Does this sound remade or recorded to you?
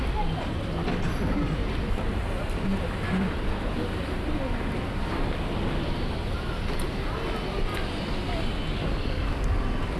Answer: recorded